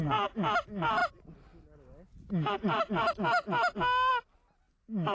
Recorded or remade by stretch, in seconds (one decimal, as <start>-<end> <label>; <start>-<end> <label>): 0.0-5.1 recorded